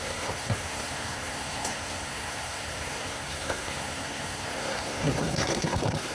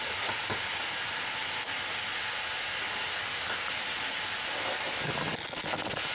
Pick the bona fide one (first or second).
second